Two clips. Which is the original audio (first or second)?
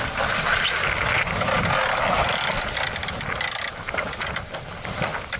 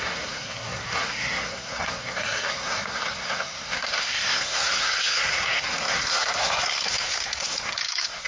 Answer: first